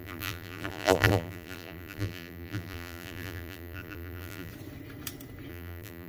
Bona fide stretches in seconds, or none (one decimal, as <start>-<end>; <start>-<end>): 4.5-5.5